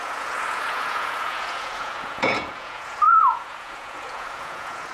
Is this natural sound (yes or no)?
no